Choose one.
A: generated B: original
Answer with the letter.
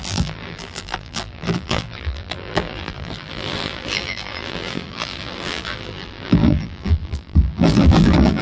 A